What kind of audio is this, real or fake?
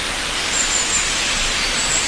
real